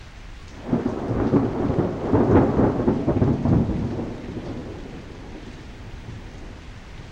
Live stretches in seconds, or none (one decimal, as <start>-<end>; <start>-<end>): 0.0-7.1